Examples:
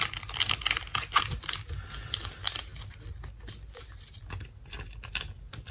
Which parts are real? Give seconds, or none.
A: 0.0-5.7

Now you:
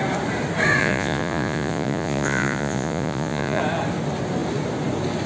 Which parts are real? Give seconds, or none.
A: 0.0-0.8; 3.6-5.3

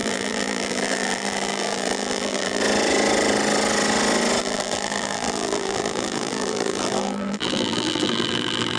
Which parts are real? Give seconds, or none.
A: 2.6-4.4

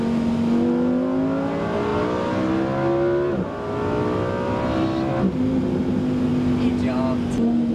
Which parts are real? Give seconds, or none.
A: 0.0-7.7